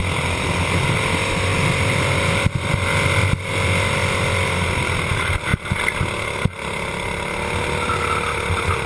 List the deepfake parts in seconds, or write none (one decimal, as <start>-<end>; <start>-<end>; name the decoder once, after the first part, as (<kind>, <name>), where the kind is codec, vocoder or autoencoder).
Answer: none

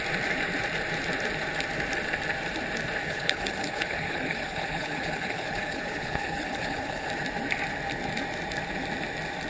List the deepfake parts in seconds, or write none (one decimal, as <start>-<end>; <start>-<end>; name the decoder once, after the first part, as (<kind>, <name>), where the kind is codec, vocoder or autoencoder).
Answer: 3.0-7.1 (codec, HILCodec)

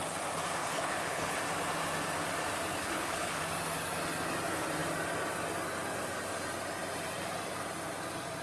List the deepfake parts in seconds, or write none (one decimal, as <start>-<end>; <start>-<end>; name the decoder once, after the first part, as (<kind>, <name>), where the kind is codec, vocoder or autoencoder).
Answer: 0.6-1.4 (codec, HILCodec); 2.7-3.4

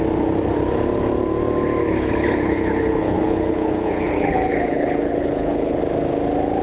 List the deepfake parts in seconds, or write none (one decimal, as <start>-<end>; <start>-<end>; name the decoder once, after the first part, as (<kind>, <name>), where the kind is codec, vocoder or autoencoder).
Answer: 1.8-5.8 (codec, HILCodec)

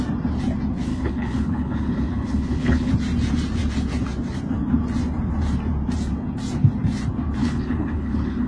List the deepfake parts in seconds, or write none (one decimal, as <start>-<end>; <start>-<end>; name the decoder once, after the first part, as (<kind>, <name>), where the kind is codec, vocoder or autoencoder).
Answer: 0.9-2.9 (codec, HILCodec); 7.4-8.5